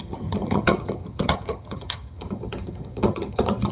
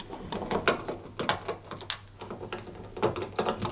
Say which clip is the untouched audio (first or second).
second